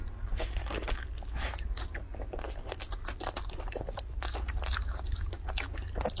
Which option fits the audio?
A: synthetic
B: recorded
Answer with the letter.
B